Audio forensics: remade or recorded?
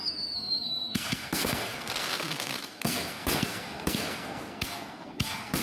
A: remade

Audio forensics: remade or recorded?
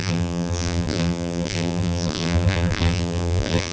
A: remade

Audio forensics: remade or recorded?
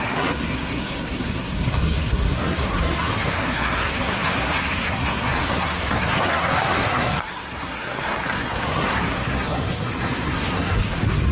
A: remade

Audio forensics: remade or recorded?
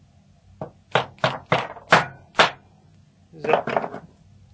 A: recorded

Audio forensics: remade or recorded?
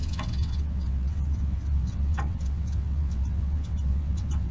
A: remade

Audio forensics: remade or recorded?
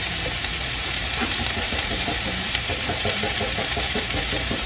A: remade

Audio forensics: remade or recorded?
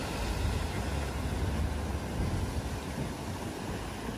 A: recorded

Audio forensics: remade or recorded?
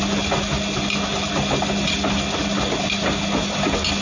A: recorded